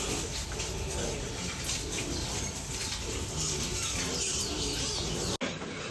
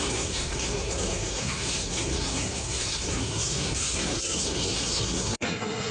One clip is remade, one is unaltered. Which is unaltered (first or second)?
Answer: first